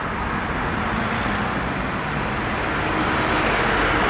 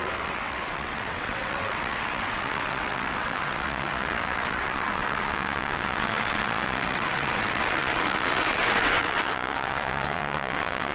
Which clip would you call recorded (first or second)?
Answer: first